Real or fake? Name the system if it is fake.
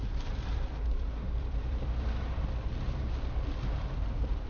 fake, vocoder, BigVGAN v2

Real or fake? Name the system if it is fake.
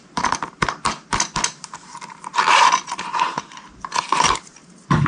fake, vocoder, BigVGAN v2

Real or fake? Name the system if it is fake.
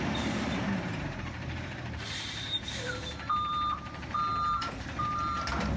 fake, vocoder, BigVGAN v2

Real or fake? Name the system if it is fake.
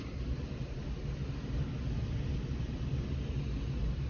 real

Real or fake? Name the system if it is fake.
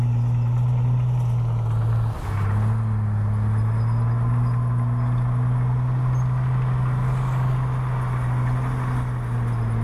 real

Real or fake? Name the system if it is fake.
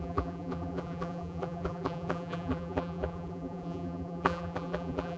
fake, vocoder, BigVGAN v2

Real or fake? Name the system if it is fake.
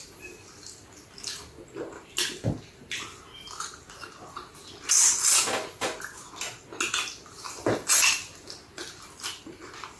real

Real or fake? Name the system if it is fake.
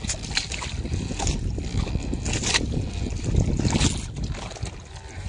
real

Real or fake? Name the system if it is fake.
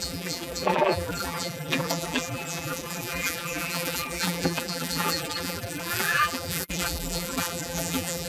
fake, vocoder, BigVGAN v2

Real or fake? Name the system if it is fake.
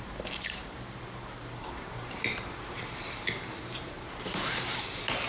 fake, vocoder, BigVGAN v2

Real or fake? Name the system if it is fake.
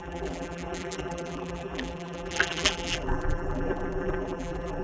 fake, vocoder, BigVGAN v2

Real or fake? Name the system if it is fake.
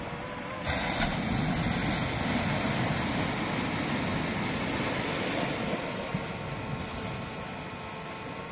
real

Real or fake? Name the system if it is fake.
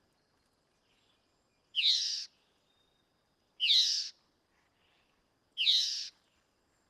real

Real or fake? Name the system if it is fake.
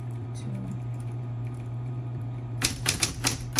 fake, vocoder, BigVGAN v2